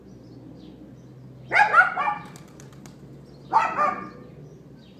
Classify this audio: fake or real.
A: real